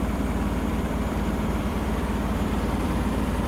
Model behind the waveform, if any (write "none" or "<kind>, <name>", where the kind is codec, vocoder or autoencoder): vocoder, BigVGAN v2